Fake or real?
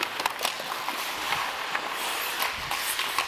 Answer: real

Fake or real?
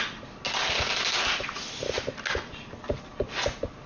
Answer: real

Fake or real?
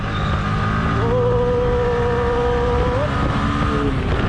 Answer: real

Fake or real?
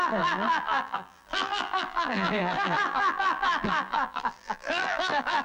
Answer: fake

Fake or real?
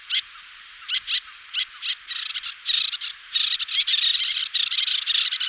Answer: real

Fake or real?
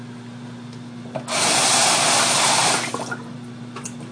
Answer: fake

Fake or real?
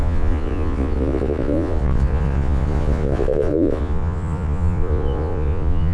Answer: fake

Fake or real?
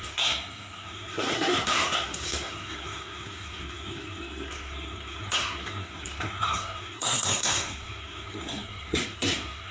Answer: fake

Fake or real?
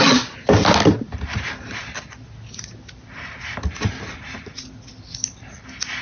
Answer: real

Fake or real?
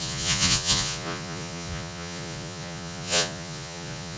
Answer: fake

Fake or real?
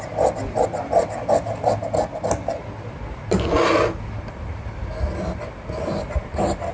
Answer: real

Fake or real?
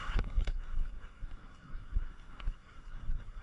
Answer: fake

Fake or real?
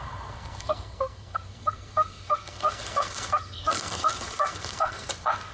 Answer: fake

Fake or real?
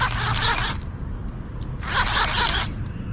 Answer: real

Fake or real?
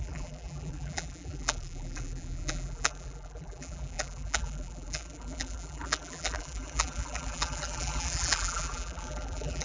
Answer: fake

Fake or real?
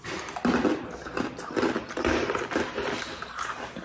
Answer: real